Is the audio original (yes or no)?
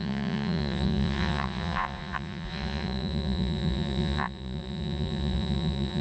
no